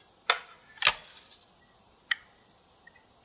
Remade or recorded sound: recorded